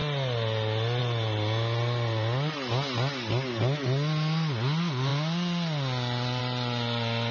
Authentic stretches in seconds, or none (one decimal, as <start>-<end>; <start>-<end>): 0.0-7.3